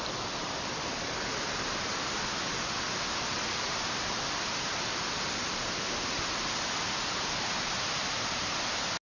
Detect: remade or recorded recorded